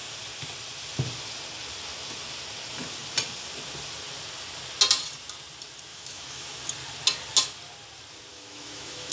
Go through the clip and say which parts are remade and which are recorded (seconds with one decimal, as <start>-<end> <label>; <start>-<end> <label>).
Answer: 0.0-5.9 recorded; 5.9-6.6 remade; 6.6-8.3 recorded; 8.3-9.1 remade